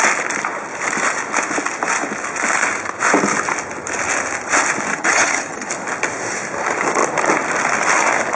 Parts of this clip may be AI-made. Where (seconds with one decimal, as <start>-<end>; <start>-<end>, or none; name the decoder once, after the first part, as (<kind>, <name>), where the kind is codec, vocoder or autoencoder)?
4.9-5.7 (vocoder, HiFi-GAN)